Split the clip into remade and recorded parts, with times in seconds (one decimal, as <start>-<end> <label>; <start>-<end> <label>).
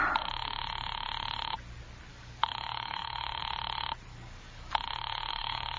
0.0-2.1 recorded; 2.1-3.4 remade; 3.4-4.1 recorded; 4.1-4.7 remade; 4.7-5.3 recorded; 5.3-5.8 remade